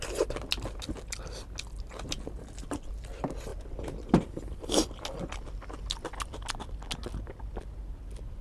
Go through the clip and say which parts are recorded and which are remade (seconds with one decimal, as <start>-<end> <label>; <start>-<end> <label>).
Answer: 0.0-8.4 recorded